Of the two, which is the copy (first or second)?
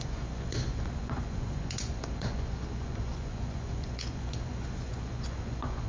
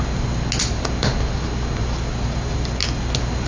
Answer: first